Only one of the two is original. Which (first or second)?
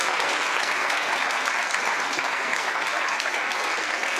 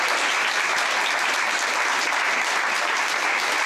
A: second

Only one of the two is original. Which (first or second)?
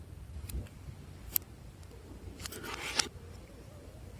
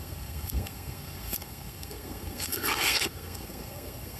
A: first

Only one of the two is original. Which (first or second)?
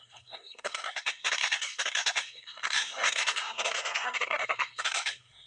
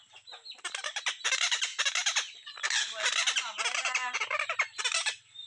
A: second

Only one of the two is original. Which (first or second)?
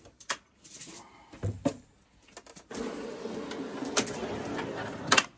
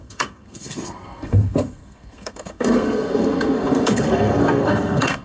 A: first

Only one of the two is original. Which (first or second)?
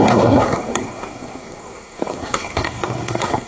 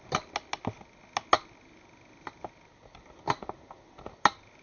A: second